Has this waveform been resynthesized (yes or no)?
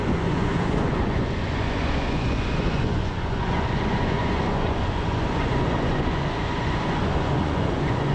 yes